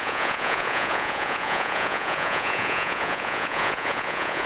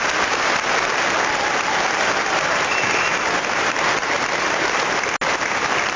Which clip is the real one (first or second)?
second